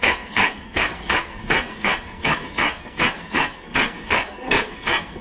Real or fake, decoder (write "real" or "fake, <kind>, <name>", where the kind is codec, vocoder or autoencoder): fake, codec, SNAC